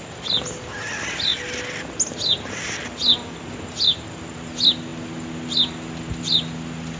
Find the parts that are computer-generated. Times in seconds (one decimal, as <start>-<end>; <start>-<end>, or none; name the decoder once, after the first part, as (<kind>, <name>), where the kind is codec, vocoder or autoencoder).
none